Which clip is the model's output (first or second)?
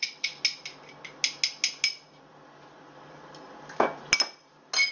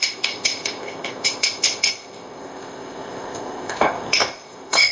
second